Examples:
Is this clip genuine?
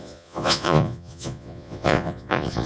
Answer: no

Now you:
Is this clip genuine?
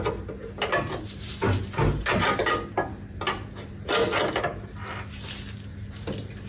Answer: yes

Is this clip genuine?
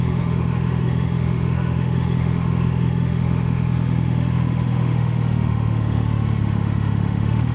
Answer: no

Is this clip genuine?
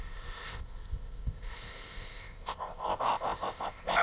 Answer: no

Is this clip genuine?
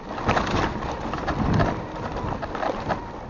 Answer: yes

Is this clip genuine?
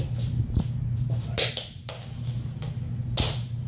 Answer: yes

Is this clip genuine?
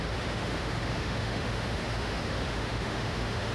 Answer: no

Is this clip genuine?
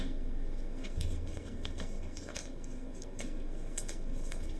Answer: no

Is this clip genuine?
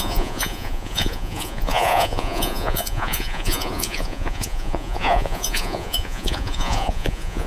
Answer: no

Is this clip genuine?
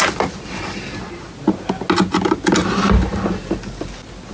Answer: yes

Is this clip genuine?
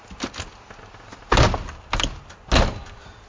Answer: yes